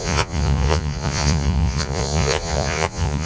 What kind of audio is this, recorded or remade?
remade